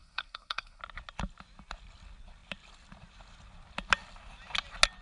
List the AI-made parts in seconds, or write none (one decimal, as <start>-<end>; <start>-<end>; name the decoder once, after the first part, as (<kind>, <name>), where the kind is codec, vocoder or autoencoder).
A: 0.0-0.8 (codec, SNAC)